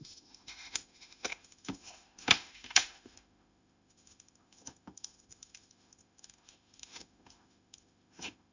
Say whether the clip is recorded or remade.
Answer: remade